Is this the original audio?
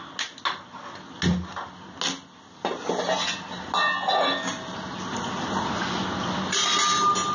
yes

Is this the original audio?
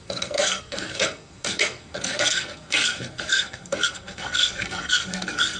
no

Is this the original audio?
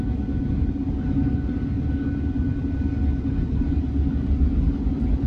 yes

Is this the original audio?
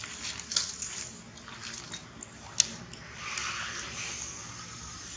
yes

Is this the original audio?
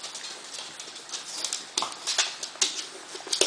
yes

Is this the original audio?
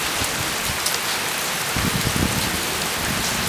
yes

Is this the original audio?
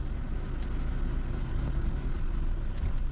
yes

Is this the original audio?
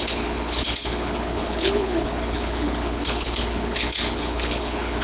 no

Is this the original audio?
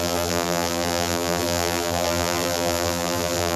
no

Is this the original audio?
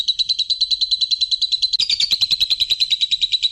yes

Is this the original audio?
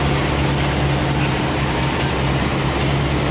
yes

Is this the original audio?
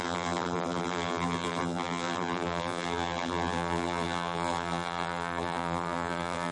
no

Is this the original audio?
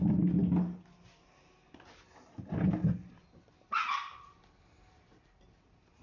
yes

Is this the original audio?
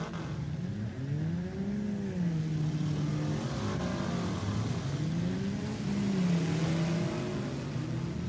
yes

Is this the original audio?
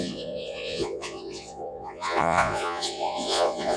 no